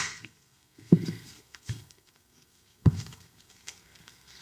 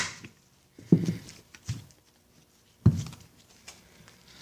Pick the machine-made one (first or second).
first